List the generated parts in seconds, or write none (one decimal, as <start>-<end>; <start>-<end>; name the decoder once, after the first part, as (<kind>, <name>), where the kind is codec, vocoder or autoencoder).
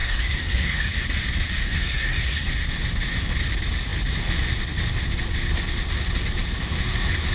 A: 0.0-0.9 (codec, SNAC); 1.6-2.5